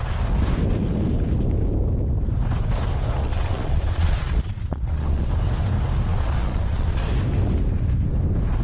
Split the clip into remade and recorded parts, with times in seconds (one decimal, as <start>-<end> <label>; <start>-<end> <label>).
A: 0.0-3.2 recorded; 3.2-5.3 remade; 5.3-6.1 recorded; 6.1-7.0 remade; 7.0-8.6 recorded